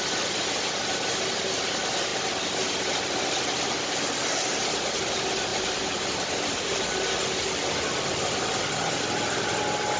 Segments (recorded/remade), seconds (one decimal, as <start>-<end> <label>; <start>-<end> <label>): 0.0-5.5 recorded; 5.5-6.8 remade; 6.8-10.0 recorded